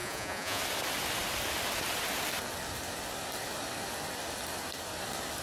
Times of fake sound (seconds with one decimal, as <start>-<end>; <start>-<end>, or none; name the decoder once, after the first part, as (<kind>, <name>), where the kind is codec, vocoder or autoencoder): 0.0-0.6 (vocoder, Vocos)